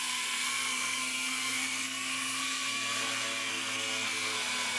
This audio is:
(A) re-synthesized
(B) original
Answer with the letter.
A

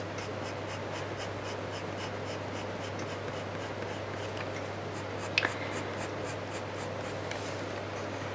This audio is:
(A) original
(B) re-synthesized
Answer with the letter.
A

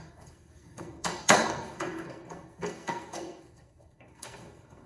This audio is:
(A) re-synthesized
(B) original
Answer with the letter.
A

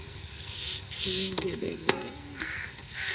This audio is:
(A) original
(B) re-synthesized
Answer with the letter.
B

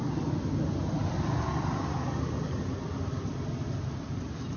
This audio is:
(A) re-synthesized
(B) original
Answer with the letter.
B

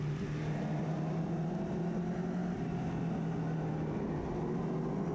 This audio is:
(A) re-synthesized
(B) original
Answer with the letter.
B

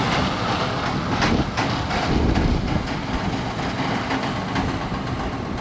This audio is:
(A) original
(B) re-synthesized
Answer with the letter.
A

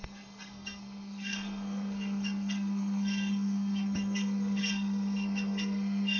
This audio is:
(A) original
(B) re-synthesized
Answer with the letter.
B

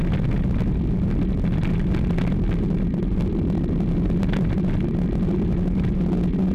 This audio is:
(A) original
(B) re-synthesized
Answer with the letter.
A